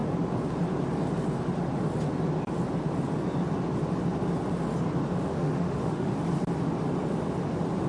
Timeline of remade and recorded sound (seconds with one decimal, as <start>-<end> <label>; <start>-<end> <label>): 0.0-5.3 recorded; 5.3-6.1 remade; 6.1-7.9 recorded